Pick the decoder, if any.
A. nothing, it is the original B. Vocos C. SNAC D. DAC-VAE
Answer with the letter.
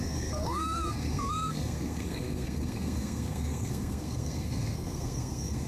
C